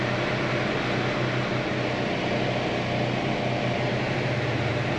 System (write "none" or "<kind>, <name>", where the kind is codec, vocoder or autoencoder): none